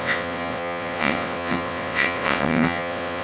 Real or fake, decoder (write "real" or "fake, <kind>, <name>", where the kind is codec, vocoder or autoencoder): fake, vocoder, WaveNeXt